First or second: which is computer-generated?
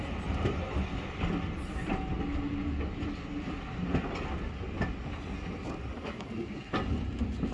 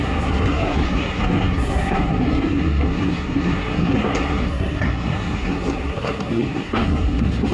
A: second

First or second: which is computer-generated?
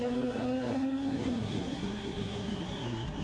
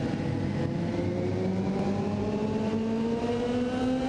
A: first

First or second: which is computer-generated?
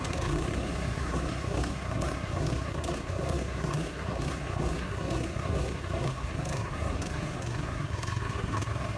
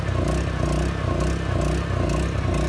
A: first